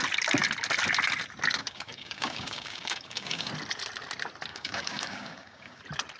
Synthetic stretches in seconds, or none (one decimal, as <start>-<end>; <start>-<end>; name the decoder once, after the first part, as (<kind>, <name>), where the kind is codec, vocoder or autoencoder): 1.6-3.5 (codec, DAC); 4.5-5.8